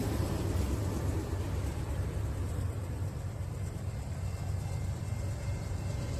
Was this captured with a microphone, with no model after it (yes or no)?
no